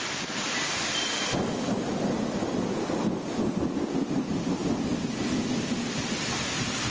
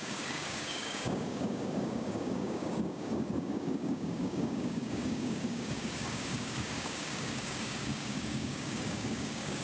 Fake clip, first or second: second